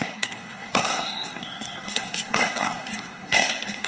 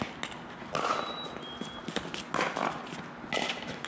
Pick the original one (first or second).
second